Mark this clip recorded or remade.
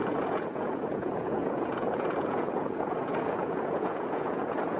remade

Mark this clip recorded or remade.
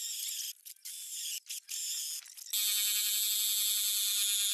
recorded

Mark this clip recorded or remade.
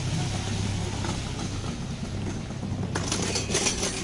recorded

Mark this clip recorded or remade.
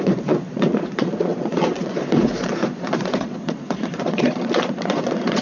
remade